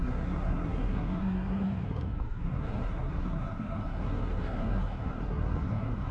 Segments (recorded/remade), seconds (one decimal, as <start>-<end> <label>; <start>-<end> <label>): 0.0-6.1 remade